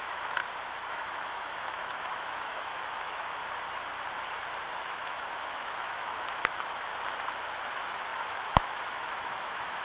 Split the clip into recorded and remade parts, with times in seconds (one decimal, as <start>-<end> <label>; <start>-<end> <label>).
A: 0.0-0.4 remade; 0.4-0.9 recorded; 0.9-3.4 remade; 3.4-4.7 recorded; 4.7-6.9 remade; 6.9-7.7 recorded; 7.7-9.8 remade